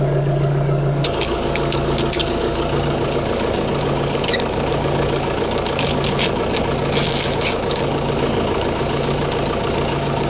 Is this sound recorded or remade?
remade